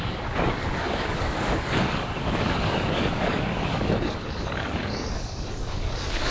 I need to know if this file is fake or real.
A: fake